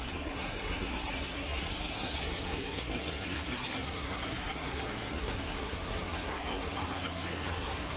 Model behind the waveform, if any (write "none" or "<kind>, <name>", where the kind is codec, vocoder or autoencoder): codec, SNAC